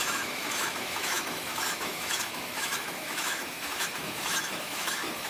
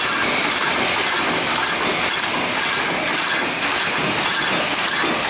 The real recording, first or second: second